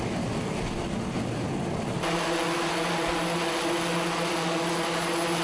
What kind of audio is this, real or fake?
real